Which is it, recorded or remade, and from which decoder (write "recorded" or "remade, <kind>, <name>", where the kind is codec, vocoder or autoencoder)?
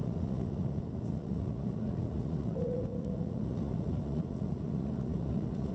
remade, vocoder, Vocos